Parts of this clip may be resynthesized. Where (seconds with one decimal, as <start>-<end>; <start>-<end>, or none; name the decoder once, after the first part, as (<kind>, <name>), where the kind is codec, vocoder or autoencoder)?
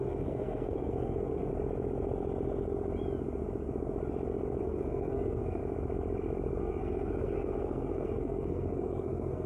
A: 0.0-1.5 (codec, SNAC); 4.6-5.6; 6.6-9.5